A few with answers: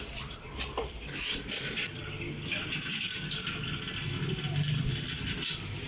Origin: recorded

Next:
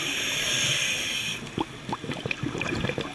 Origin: recorded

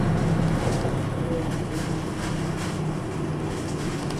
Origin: recorded